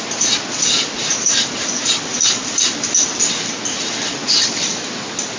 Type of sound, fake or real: real